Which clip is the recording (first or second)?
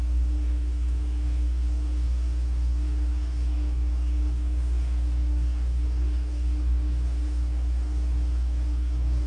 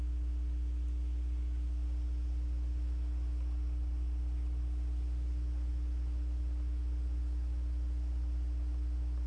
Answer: second